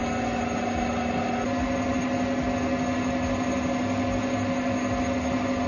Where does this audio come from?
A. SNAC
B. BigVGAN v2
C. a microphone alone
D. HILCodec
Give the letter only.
C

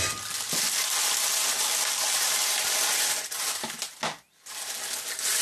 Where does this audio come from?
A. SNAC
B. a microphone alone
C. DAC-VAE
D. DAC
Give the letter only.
B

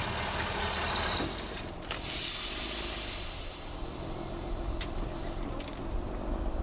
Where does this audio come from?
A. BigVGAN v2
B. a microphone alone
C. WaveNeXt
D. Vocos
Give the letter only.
B